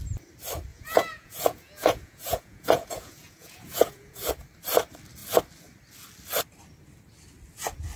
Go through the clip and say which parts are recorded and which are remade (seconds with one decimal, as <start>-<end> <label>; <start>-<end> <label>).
0.0-0.7 recorded; 0.7-4.3 remade; 4.3-8.0 recorded